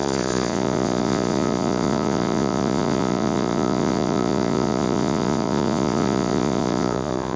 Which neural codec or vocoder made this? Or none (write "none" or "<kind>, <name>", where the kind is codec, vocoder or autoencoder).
vocoder, Vocos